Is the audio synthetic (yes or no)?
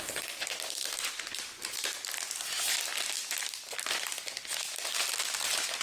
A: no